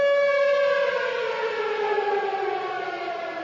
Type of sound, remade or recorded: recorded